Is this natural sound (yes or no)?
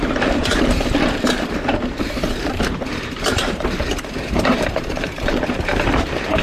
no